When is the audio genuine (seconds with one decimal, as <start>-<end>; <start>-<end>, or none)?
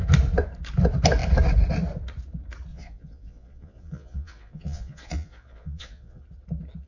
0.0-2.7; 6.2-6.9